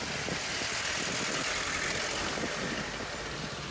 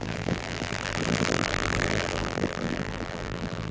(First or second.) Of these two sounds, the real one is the first